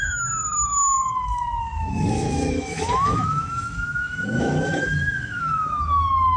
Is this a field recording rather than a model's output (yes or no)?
no